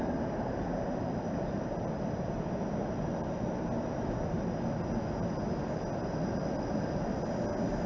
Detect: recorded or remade recorded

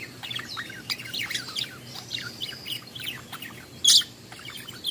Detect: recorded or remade recorded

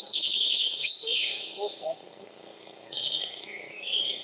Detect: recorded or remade remade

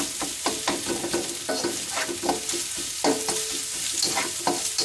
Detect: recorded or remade recorded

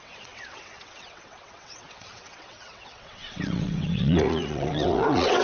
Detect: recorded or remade remade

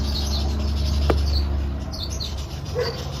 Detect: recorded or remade recorded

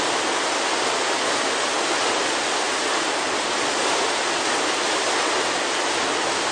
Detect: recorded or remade recorded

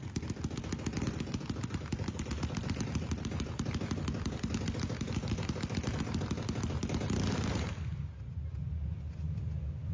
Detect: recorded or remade recorded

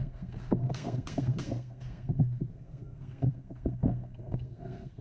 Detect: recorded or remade remade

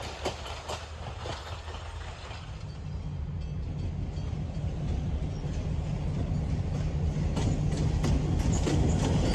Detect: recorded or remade recorded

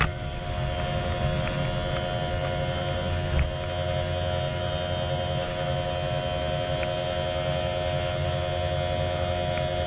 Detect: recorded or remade recorded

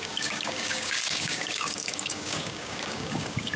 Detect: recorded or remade remade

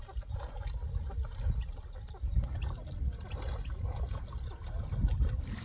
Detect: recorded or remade recorded